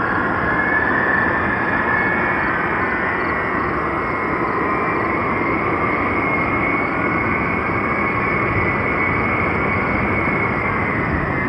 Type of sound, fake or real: real